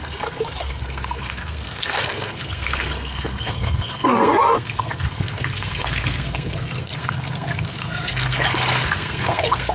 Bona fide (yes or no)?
no